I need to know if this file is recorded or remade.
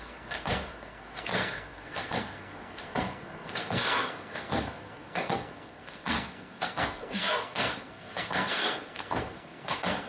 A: remade